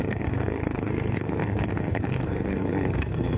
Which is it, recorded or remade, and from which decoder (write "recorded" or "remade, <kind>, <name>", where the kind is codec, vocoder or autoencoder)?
remade, codec, SNAC